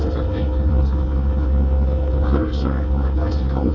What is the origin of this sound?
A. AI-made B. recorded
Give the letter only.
A